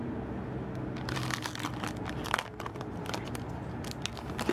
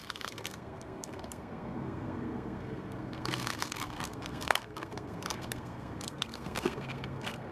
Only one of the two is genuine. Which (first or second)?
first